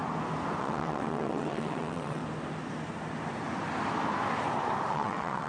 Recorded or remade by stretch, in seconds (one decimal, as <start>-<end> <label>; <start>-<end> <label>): 0.0-0.6 recorded; 0.6-2.2 remade; 2.2-4.9 recorded; 4.9-5.5 remade